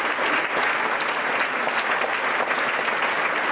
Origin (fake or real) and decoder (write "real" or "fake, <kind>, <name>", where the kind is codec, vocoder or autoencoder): real